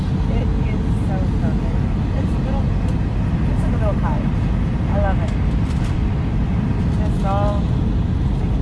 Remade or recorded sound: recorded